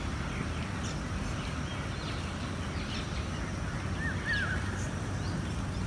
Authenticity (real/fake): real